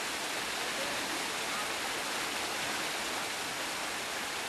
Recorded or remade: recorded